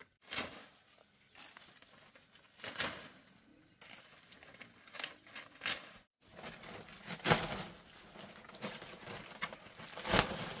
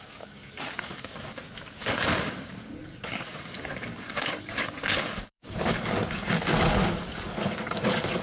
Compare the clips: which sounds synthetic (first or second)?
second